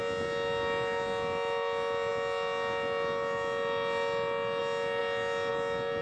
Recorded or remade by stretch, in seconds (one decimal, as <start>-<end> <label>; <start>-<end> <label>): 0.0-6.0 recorded

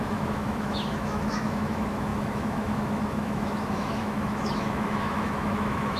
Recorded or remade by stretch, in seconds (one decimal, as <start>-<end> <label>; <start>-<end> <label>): 0.0-6.0 remade

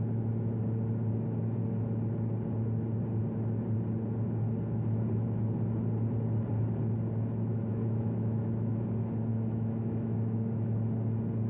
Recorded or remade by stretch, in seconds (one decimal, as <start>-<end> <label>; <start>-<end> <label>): 0.0-7.7 recorded; 7.7-8.8 remade; 8.8-9.3 recorded; 9.3-10.7 remade; 10.7-11.5 recorded

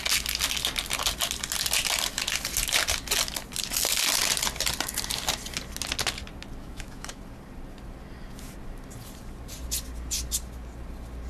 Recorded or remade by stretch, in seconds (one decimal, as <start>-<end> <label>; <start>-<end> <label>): 0.0-6.6 recorded; 6.6-7.2 remade; 7.2-11.3 recorded

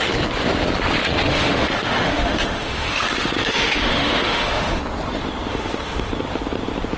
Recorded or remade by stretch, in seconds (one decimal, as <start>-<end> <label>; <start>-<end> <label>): 0.0-1.3 recorded; 1.3-4.8 remade; 4.8-5.5 recorded; 5.5-6.1 remade; 6.1-7.0 recorded

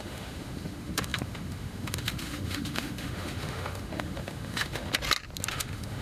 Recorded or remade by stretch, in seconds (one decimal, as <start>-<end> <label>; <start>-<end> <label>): 0.0-4.9 remade; 4.9-5.5 recorded; 5.5-6.0 remade

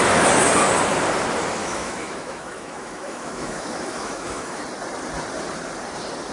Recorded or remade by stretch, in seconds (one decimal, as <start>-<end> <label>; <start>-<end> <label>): 0.0-1.6 recorded; 1.6-4.6 remade; 4.6-6.3 recorded

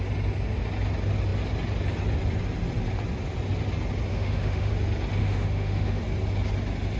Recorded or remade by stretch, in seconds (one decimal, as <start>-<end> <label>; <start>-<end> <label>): 0.0-4.1 recorded; 4.1-4.7 remade; 4.7-5.2 recorded; 5.2-6.0 remade; 6.0-7.0 recorded